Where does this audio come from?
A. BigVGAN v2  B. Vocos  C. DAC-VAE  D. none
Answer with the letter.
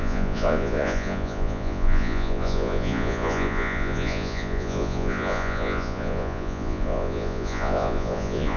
B